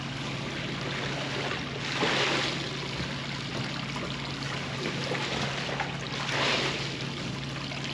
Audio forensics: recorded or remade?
recorded